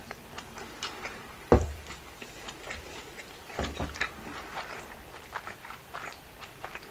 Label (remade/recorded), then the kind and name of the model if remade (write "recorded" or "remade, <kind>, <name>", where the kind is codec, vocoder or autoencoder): remade, vocoder, BigVGAN v2